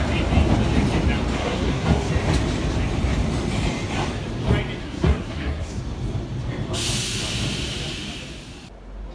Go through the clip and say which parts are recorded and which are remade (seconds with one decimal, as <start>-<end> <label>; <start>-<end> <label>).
0.0-1.4 recorded; 1.4-2.1 remade; 2.1-4.8 recorded; 4.8-5.8 remade; 5.8-9.1 recorded